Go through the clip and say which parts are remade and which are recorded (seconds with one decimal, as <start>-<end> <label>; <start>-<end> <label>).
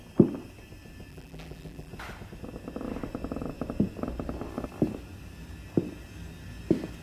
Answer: 0.0-1.1 recorded; 1.1-1.9 remade; 1.9-7.0 recorded